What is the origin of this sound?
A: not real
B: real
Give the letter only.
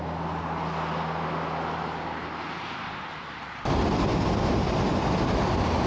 B